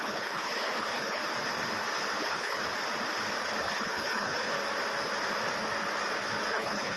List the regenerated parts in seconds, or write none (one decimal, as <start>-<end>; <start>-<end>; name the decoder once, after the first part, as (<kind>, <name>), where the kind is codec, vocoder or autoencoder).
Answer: 0.0-1.2 (codec, HILCodec); 2.2-2.6; 3.6-4.5; 6.5-7.0